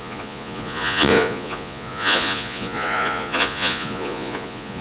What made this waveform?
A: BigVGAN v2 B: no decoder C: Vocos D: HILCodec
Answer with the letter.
C